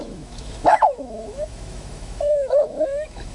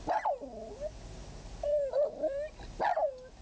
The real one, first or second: second